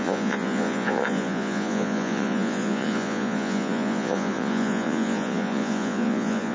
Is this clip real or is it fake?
fake